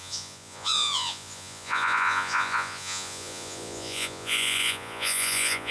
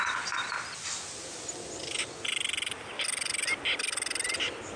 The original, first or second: second